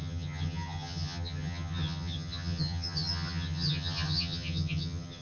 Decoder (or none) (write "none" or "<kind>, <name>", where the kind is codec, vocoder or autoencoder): vocoder, HiFi-GAN